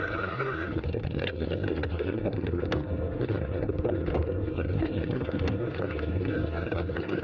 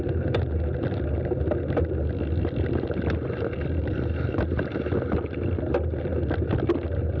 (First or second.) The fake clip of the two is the first